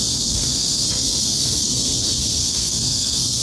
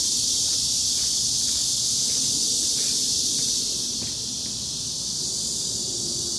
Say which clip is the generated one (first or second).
first